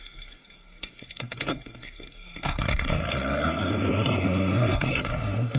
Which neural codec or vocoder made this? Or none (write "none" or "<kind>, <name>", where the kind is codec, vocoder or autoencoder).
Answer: codec, SNAC